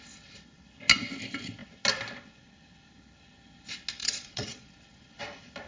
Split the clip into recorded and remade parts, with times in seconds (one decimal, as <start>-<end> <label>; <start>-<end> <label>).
0.0-4.0 recorded; 4.0-4.7 remade; 4.7-5.7 recorded